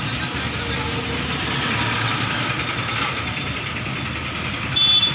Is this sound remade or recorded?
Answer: recorded